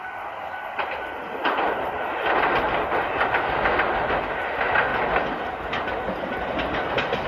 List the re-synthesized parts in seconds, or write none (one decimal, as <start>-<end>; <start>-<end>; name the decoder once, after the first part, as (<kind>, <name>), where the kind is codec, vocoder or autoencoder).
1.4-2.7 (vocoder, BigVGAN v2)